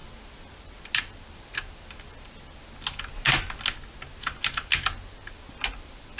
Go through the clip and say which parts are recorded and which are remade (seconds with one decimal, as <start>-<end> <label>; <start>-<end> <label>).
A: 0.0-6.2 recorded